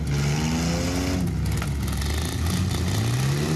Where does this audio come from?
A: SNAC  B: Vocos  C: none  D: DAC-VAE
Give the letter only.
C